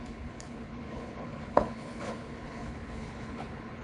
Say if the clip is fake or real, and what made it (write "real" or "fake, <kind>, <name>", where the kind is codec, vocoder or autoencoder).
fake, codec, HILCodec